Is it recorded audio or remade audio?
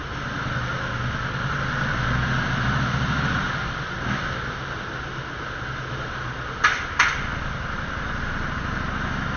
recorded